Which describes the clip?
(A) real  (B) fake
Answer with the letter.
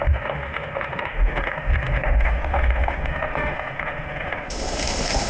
B